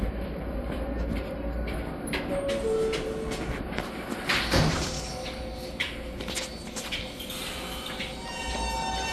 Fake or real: real